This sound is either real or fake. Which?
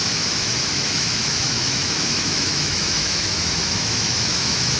fake